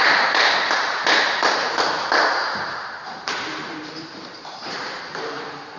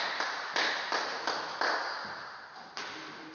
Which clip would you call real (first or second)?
second